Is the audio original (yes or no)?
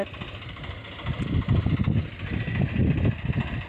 yes